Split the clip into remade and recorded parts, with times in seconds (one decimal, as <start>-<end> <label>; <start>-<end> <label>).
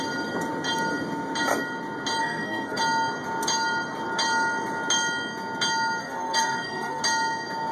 0.0-2.2 recorded; 2.2-2.8 remade; 2.8-6.0 recorded; 6.0-7.0 remade; 7.0-7.7 recorded